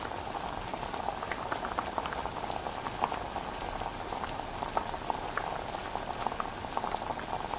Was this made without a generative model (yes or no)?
yes